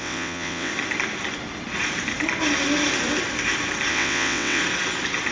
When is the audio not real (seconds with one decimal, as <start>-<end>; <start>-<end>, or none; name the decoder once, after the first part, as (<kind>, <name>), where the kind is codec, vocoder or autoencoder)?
0.0-0.7 (vocoder, WaveNeXt); 3.9-4.6